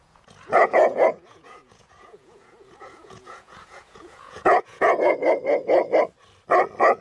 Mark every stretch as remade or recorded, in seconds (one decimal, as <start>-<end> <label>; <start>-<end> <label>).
0.0-5.2 remade; 5.2-7.0 recorded